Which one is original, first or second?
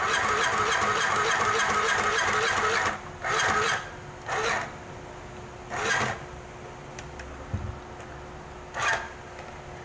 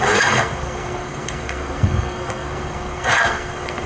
first